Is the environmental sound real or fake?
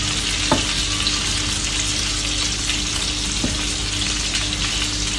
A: real